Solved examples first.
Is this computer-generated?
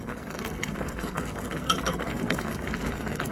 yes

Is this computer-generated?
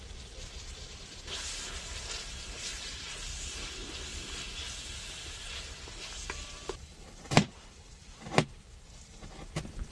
no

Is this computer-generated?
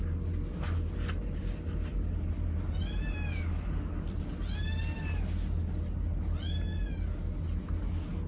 no